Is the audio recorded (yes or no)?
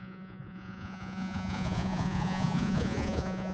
no